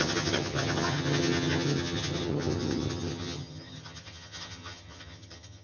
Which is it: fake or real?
fake